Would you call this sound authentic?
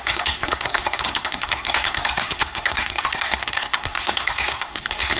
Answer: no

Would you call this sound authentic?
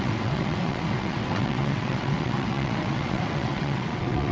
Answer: no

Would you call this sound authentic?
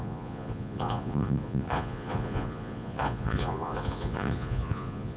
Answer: no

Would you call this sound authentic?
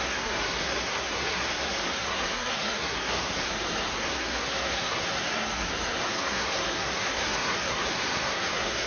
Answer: no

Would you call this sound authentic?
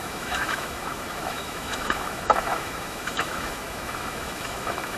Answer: no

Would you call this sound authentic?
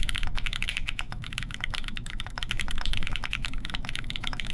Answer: no